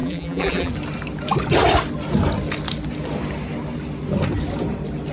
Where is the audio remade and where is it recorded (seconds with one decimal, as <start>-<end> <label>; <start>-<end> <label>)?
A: 0.0-0.7 remade; 0.7-5.1 recorded